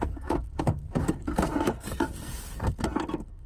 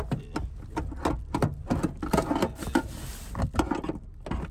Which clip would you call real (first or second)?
second